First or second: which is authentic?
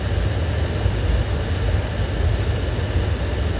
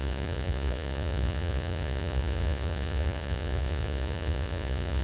first